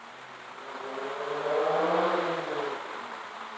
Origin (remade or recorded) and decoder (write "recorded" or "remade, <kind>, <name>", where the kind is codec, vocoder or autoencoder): recorded